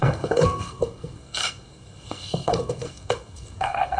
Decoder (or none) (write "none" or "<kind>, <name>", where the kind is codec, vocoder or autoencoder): codec, SNAC